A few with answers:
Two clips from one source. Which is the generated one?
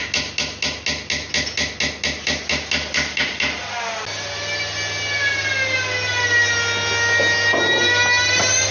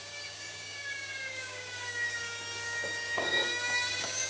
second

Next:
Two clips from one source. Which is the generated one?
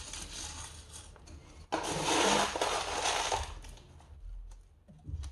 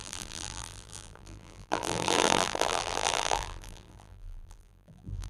second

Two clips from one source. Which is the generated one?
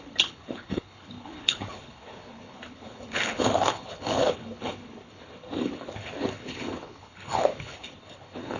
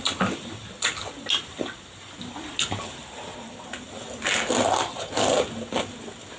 first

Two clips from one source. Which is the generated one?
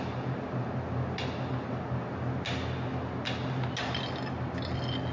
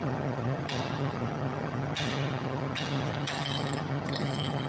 second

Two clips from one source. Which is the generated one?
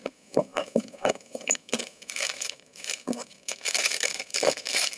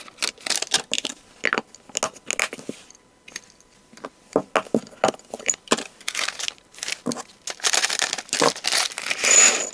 first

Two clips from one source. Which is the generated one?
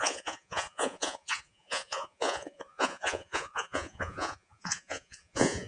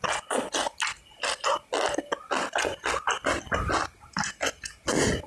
first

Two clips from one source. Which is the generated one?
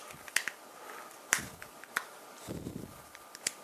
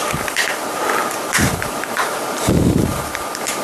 second